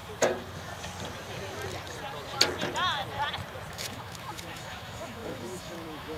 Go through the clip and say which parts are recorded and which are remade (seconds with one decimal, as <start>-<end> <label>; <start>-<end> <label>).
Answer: 0.0-3.7 recorded; 3.7-6.2 remade